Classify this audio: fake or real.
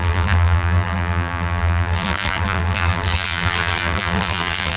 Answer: fake